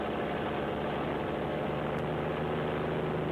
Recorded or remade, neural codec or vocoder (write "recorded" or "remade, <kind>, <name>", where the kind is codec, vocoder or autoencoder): recorded